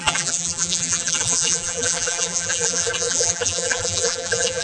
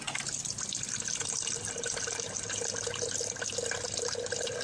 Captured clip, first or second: second